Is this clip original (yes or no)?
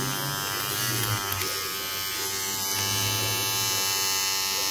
yes